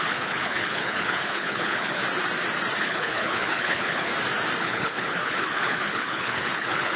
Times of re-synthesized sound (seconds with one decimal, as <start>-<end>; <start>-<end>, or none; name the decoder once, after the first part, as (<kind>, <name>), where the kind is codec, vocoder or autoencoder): 0.0-2.0 (codec, HILCodec); 2.8-4.1; 4.6-7.0

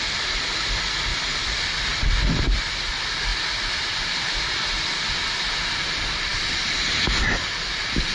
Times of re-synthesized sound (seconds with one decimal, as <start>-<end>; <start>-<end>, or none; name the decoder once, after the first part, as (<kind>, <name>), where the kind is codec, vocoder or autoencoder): 0.0-3.3 (vocoder, BigVGAN v2); 5.8-6.3; 6.9-8.1

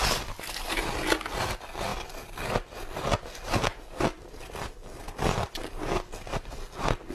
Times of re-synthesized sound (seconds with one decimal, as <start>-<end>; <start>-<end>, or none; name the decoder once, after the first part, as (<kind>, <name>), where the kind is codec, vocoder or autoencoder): none